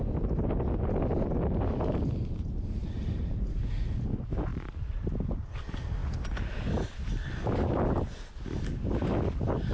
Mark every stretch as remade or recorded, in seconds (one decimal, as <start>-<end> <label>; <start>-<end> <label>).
0.0-2.8 recorded; 2.8-3.6 remade; 3.6-4.5 recorded; 4.5-5.1 remade; 5.1-9.7 recorded